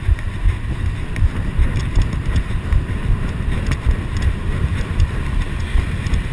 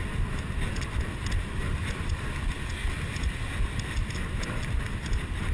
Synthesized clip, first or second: first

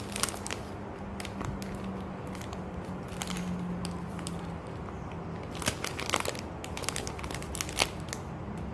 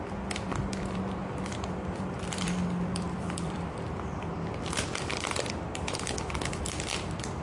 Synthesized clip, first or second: second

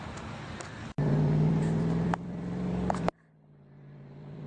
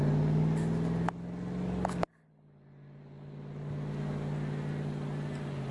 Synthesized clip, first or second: first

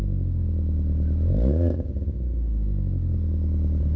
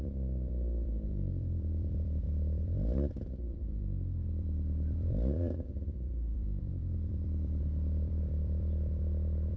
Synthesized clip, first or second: second